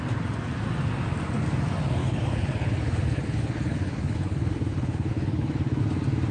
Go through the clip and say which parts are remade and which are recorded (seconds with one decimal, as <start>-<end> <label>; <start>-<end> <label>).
0.0-2.0 recorded; 2.0-5.8 remade; 5.8-6.3 recorded